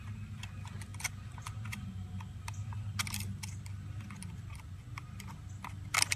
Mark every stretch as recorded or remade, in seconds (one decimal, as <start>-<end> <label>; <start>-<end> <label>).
0.0-6.2 recorded